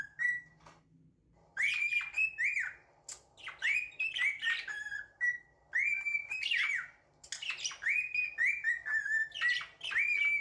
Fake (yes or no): no